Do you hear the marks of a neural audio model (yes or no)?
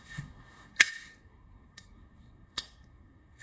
yes